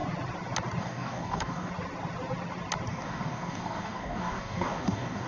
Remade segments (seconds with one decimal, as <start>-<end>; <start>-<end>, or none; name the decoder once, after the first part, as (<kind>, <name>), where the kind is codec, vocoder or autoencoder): 0.8-1.7 (codec, DAC); 2.9-5.3